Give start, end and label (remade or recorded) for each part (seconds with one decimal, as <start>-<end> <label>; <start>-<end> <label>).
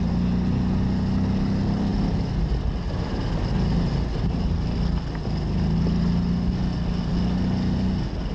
0.0-8.3 recorded